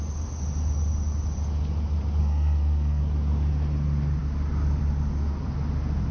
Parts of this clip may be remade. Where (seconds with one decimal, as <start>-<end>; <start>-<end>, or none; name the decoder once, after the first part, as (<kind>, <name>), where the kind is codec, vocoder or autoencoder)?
2.2-3.0 (codec, SNAC)